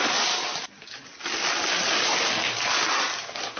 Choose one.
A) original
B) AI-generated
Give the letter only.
A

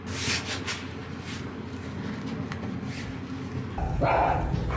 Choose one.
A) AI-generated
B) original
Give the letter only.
B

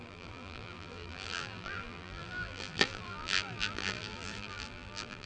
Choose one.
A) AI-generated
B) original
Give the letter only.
A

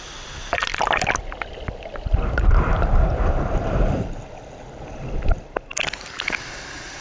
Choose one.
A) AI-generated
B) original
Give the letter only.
B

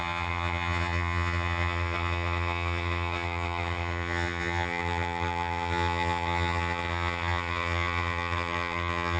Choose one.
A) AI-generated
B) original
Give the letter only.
A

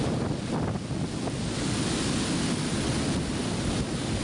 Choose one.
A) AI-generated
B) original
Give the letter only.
B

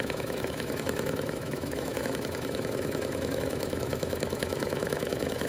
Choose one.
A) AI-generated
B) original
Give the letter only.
A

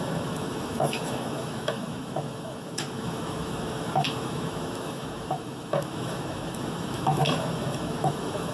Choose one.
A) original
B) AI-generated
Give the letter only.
B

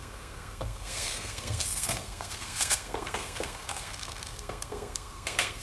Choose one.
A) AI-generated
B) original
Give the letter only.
A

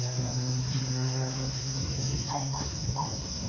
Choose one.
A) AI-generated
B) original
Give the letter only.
A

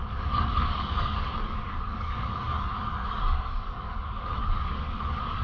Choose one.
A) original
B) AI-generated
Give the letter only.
B